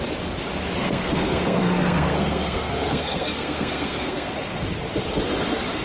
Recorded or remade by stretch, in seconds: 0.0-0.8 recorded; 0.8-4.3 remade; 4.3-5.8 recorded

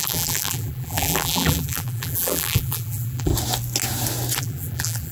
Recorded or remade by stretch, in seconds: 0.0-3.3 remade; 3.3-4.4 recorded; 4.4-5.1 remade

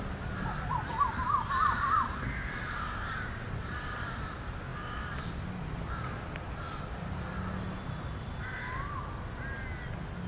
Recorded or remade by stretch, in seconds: 0.0-10.3 recorded

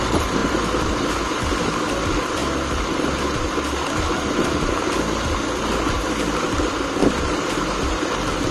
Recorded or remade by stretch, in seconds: 0.0-7.0 recorded; 7.0-8.0 remade; 8.0-8.5 recorded

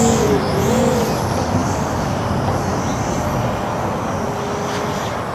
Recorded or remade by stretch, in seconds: 0.0-1.6 recorded; 1.6-2.2 remade; 2.2-5.3 recorded

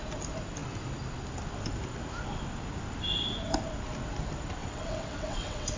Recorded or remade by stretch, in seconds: 0.0-4.6 recorded; 4.6-5.8 remade